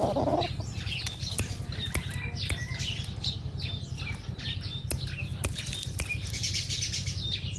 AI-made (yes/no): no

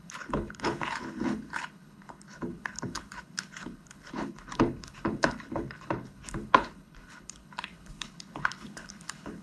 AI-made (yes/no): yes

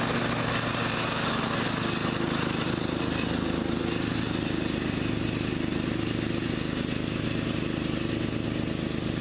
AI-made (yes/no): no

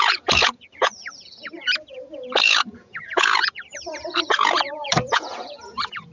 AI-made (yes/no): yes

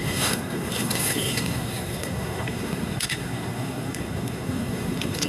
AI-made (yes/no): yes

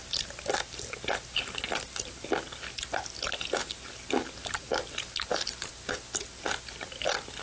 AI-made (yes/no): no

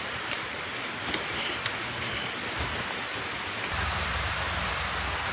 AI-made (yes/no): no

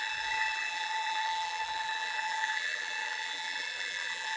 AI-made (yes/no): yes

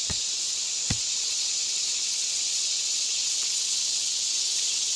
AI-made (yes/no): yes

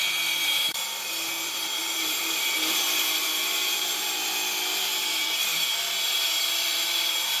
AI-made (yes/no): yes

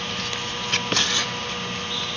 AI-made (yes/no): no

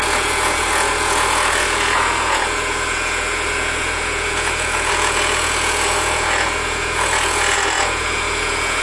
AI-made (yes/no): yes